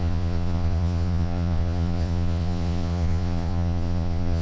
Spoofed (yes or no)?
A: yes